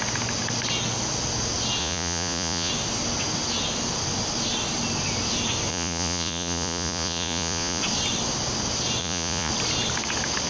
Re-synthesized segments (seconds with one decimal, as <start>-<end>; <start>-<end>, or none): 1.8-2.7; 5.7-7.8; 9.0-9.5